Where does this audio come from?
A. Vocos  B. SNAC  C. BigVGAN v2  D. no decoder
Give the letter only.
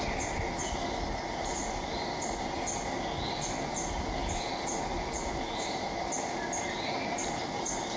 D